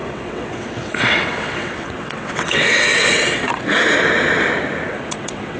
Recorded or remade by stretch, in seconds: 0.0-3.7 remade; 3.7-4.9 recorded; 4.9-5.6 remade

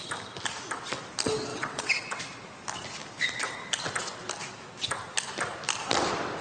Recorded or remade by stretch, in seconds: 0.0-1.5 recorded; 1.5-2.2 remade; 2.2-6.4 recorded

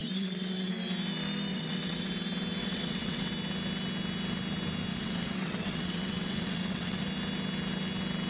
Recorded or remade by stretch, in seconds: 0.0-0.7 remade; 0.7-1.5 recorded; 1.5-2.1 remade; 2.1-2.6 recorded; 2.6-3.3 remade; 3.3-4.9 recorded; 4.9-7.0 remade; 7.0-8.3 recorded

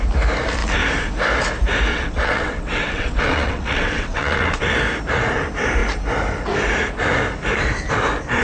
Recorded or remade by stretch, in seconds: 0.0-1.9 recorded; 1.9-4.6 remade; 4.6-8.4 recorded